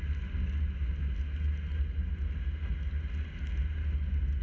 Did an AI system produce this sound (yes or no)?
no